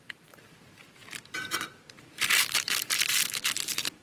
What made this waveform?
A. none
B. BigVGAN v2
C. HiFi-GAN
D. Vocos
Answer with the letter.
B